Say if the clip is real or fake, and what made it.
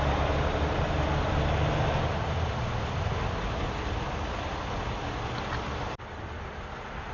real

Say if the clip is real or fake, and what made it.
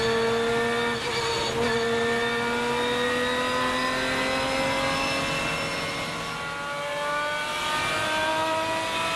real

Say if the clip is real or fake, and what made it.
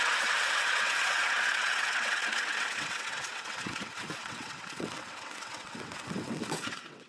fake, vocoder, WaveNeXt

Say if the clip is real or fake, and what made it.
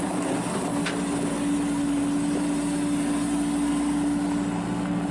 real